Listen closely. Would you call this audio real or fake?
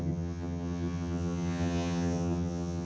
fake